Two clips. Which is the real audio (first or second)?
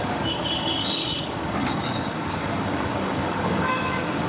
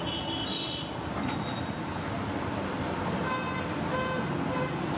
second